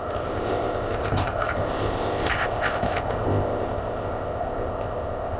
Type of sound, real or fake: fake